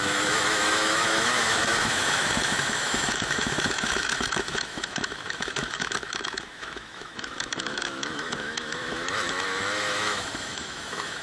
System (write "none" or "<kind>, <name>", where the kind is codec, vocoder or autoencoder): autoencoder, DAC-VAE